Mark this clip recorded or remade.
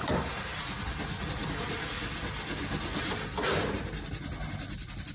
recorded